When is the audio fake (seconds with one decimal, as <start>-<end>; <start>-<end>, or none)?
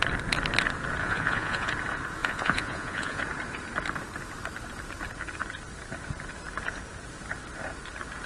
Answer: 1.0-1.7; 2.2-3.2